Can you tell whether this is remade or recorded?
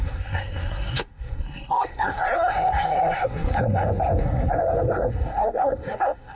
remade